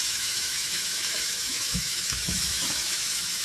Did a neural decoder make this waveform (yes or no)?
yes